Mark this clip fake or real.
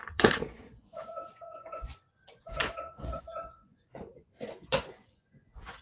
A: fake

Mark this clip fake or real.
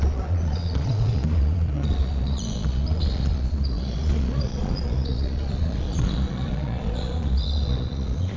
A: fake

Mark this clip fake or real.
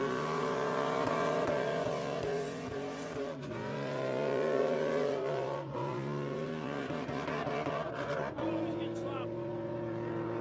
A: fake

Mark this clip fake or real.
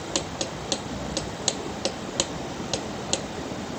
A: real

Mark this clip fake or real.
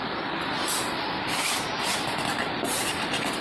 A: real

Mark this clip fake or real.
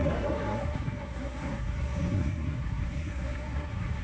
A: fake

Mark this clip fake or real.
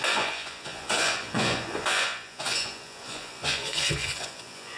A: fake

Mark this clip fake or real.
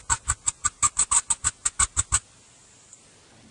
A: real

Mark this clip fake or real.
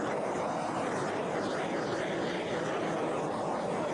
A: real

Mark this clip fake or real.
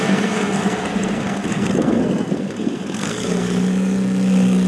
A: fake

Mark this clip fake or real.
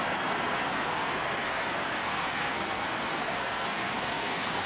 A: fake